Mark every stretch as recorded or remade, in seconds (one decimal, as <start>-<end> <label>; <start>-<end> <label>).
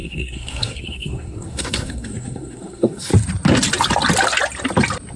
0.0-3.1 remade; 3.1-5.2 recorded